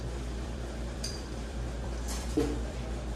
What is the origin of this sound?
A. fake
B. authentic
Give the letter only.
A